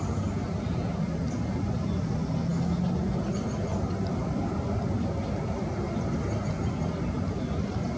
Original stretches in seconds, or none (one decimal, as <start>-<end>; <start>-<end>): 0.0-8.0